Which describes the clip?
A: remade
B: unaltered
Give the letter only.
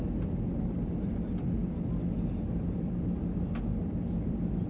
B